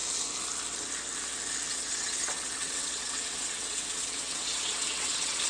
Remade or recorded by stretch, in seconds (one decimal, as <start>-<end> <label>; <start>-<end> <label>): 0.0-1.7 recorded; 1.7-5.5 remade